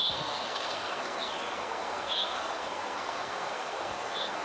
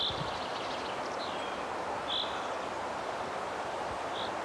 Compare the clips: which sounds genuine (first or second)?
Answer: second